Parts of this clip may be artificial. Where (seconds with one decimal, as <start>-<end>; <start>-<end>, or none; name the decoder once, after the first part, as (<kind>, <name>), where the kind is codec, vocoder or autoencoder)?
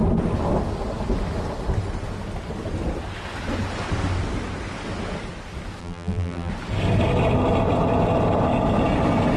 5.8-6.5 (vocoder, BigVGAN v2)